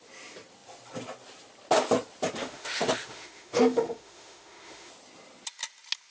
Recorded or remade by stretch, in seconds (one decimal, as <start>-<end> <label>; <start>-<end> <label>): 0.0-2.4 recorded; 2.4-4.9 remade; 4.9-6.1 recorded